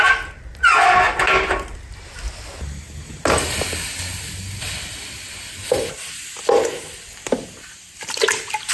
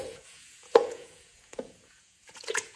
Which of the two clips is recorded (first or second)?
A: first